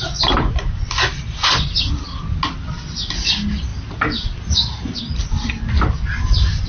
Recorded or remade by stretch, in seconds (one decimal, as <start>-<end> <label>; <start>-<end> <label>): 0.0-6.7 recorded